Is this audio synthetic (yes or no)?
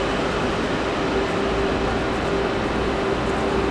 no